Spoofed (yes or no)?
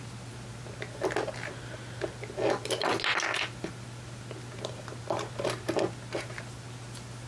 no